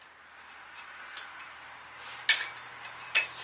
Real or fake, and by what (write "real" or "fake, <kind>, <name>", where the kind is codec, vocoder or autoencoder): real